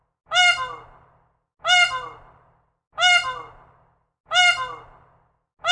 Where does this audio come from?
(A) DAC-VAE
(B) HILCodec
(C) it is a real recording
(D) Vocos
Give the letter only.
C